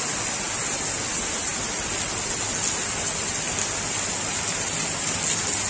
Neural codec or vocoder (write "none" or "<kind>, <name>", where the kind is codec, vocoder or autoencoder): none